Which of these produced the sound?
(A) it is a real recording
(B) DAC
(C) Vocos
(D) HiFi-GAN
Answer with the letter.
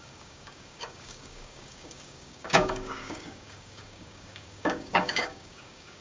B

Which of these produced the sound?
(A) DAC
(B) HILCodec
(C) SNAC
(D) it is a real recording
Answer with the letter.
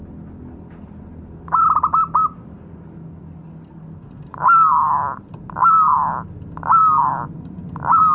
D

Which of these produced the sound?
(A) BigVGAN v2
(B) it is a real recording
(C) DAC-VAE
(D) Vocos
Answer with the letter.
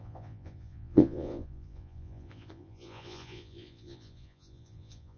D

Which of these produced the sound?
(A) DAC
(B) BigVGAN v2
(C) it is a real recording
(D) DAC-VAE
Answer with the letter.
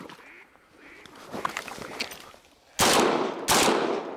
C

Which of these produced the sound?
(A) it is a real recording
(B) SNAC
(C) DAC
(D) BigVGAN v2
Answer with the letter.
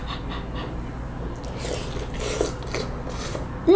A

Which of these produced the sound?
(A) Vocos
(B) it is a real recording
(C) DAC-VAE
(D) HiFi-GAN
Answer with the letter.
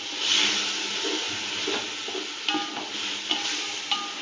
B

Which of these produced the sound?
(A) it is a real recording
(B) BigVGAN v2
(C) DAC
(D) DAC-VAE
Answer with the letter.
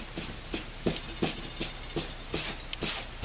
A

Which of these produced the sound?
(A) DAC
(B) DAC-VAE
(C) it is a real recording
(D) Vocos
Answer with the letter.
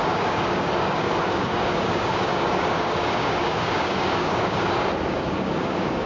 A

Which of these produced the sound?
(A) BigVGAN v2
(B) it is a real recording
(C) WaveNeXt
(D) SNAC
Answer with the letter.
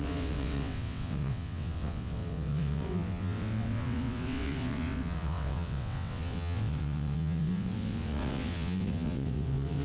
C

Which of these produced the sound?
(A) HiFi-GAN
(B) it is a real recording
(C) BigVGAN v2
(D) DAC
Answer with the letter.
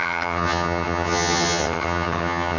A